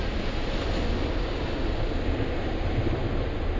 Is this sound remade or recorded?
recorded